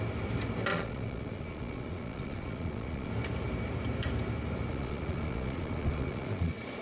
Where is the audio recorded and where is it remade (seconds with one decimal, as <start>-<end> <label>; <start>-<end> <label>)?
0.0-0.7 recorded; 0.7-3.1 remade; 3.1-4.7 recorded; 4.7-6.8 remade